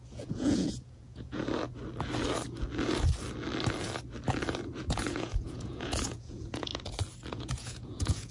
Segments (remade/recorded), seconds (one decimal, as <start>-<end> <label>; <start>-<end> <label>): 0.0-1.4 remade; 1.4-4.8 recorded; 4.8-6.7 remade; 6.7-7.3 recorded; 7.3-8.3 remade